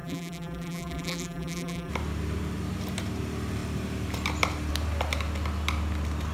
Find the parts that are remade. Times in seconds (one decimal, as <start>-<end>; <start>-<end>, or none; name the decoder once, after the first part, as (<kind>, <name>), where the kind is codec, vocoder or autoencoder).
0.0-1.9 (vocoder, BigVGAN v2)